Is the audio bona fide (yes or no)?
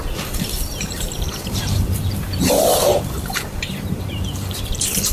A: no